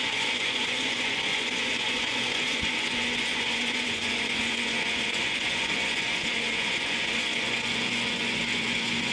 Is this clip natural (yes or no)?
no